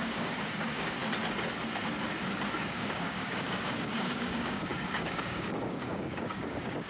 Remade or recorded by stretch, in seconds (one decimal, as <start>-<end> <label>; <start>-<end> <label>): 0.0-1.0 remade; 1.0-2.6 recorded; 2.6-6.9 remade